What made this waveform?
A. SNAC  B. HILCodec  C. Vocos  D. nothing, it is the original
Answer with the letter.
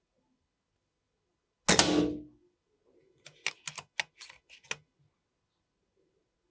D